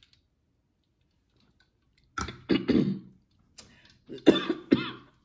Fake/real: real